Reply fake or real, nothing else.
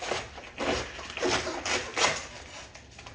real